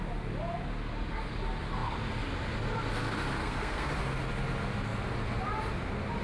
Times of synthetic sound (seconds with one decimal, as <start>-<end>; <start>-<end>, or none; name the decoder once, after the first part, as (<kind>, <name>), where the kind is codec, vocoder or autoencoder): 3.4-3.9 (codec, SNAC)